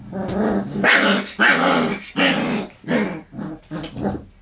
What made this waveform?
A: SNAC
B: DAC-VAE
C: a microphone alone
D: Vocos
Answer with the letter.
C